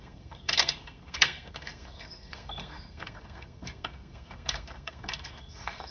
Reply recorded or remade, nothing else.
remade